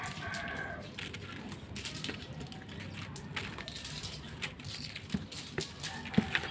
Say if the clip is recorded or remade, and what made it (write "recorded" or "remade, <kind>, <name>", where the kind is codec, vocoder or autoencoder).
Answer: recorded